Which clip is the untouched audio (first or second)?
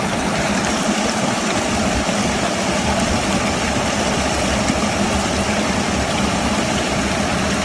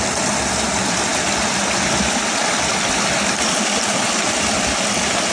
second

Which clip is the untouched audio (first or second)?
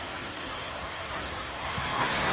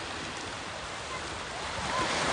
second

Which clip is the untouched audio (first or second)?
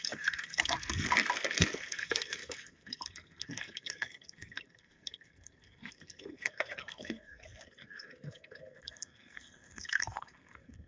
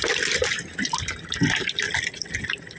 second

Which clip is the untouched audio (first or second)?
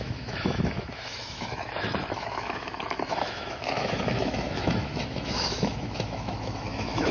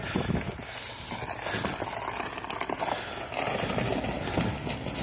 second